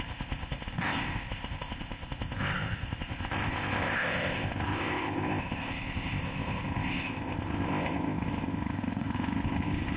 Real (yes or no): no